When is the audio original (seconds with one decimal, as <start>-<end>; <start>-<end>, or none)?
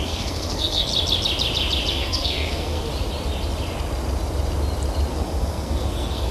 0.9-1.9; 2.9-5.1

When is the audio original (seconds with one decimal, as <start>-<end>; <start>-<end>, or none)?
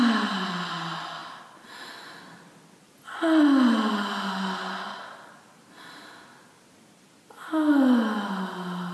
0.0-8.9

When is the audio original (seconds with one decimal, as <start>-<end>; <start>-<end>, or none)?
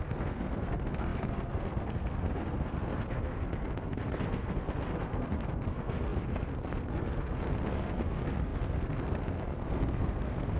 none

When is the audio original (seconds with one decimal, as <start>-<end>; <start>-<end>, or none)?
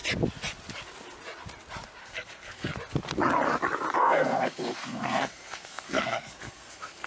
0.0-2.0; 2.7-3.9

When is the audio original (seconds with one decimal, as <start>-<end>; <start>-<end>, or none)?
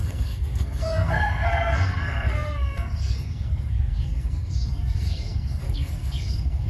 none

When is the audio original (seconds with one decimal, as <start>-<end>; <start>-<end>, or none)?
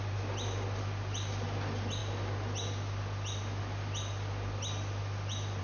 0.0-5.6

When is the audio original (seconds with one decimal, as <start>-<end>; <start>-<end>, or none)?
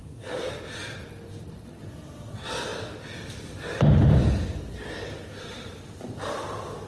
0.5-6.9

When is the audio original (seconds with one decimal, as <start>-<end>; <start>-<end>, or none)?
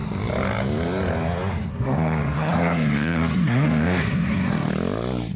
0.0-1.7; 4.7-5.4